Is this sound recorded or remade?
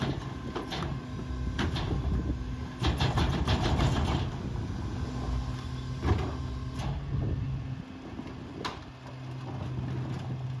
recorded